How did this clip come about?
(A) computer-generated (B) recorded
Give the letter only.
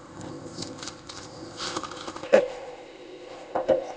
A